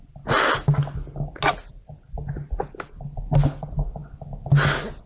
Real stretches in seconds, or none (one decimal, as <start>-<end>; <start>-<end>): 0.0-5.1